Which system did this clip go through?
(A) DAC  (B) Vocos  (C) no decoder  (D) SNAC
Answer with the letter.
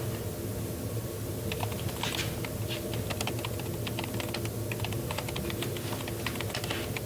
C